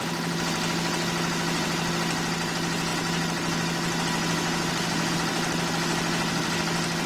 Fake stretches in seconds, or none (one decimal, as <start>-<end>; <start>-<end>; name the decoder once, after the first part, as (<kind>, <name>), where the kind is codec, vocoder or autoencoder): none